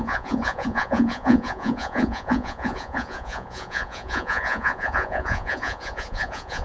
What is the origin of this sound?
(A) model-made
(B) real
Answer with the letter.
A